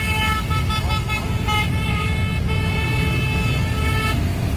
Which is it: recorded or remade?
recorded